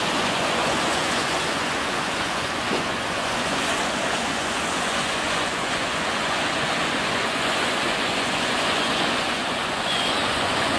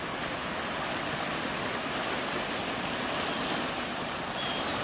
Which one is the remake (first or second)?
first